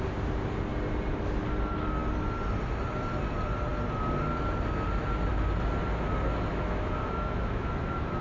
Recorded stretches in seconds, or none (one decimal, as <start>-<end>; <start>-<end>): 0.0-6.5